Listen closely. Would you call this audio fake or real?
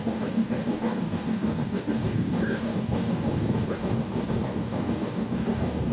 fake